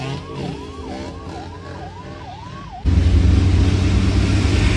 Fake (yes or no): no